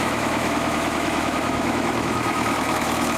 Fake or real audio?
fake